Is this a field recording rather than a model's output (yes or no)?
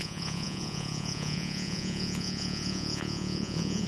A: no